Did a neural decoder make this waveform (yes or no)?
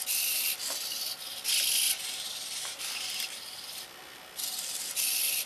no